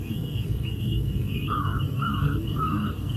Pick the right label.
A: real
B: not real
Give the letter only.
B